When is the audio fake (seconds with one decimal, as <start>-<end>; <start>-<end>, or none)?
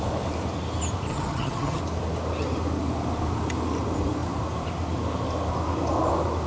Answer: 1.1-1.8